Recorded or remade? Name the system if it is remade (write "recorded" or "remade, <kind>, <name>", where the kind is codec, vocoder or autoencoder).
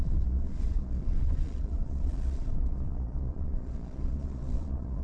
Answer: remade, vocoder, Vocos